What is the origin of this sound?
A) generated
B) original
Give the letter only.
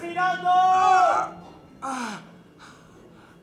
B